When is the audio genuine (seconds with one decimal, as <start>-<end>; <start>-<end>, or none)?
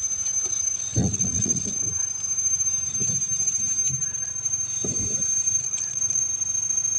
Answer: 0.0-1.0; 1.7-5.6; 6.2-7.0